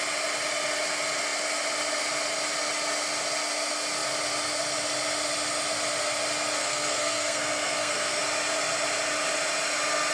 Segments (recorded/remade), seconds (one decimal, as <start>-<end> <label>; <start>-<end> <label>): 0.0-6.6 recorded; 6.6-8.2 remade; 8.2-10.1 recorded